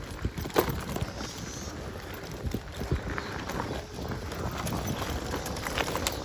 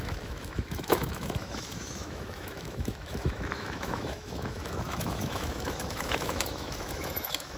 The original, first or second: first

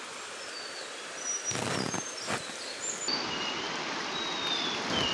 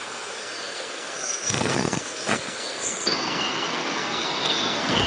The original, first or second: first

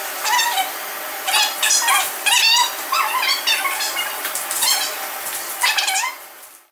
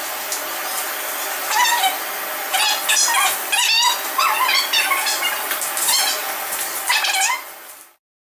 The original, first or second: second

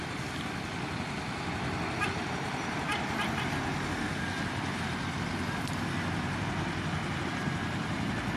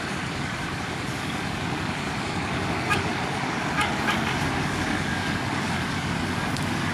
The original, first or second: first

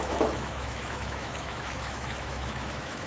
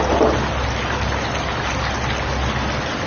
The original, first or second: second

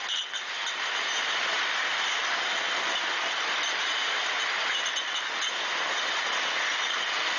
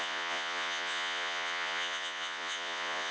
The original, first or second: first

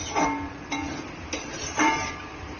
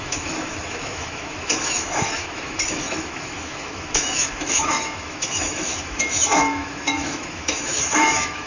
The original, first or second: first